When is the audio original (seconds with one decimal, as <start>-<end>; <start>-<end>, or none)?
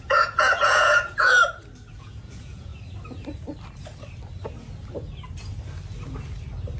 1.4-2.0; 2.7-6.8